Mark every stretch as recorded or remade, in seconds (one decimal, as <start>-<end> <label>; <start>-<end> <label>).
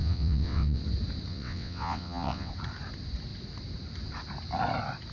0.0-0.8 remade; 0.8-1.3 recorded; 1.3-2.5 remade; 2.5-5.1 recorded